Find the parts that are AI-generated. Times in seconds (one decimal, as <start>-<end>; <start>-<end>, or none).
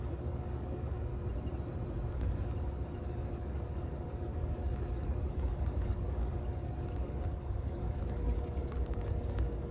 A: 0.0-1.1; 2.1-9.7